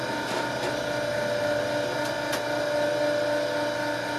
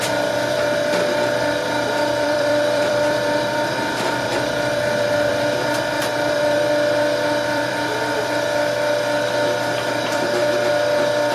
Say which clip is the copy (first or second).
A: second